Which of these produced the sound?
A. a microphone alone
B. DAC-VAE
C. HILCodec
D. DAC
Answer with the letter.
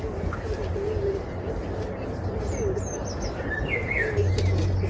A